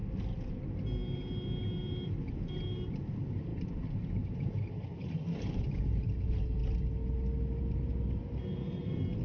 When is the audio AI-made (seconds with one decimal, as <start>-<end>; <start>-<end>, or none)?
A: 3.5-6.0

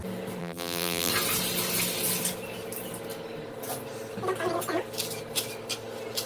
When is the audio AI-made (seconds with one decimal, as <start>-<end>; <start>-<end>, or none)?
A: 0.4-1.1

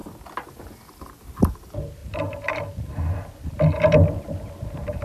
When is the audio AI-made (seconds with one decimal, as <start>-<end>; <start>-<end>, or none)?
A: 2.0-4.2

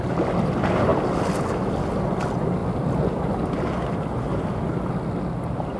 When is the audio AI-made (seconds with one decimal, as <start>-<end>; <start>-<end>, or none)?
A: none